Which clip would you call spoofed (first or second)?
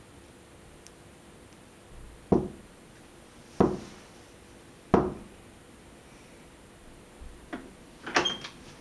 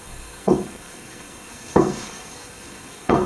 second